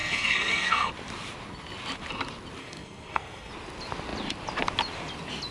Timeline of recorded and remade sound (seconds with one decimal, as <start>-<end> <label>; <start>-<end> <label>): 0.0-0.9 remade; 0.9-2.6 recorded; 2.6-3.5 remade; 3.5-5.5 recorded